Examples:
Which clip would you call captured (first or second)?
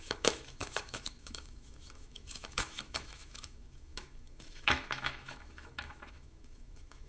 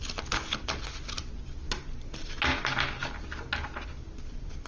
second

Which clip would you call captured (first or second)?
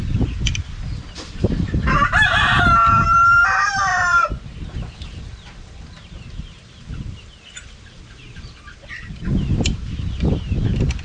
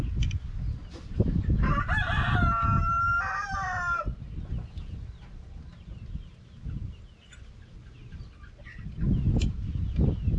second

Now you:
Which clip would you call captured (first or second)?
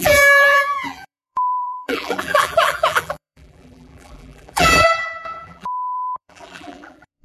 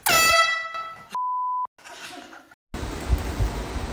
second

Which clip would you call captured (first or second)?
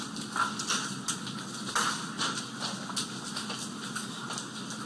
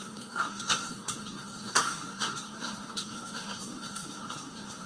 first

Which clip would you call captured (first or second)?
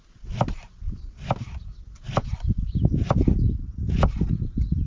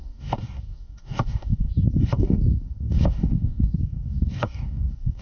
first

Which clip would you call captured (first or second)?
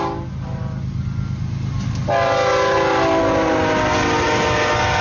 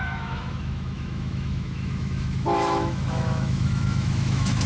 first